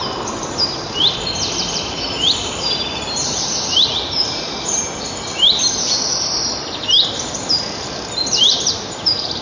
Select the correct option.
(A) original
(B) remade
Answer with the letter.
B